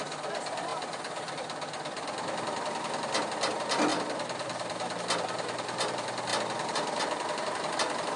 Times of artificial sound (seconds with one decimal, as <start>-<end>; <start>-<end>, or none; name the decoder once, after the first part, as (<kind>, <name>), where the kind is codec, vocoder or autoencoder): 3.9-5.0 (vocoder, BigVGAN v2); 6.3-7.0